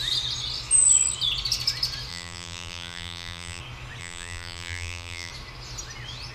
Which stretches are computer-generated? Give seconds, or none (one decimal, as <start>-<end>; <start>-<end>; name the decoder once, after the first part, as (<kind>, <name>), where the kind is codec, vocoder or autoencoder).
2.1-3.6 (vocoder, BigVGAN v2); 4.0-5.3